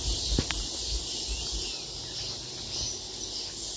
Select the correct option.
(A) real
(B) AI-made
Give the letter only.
A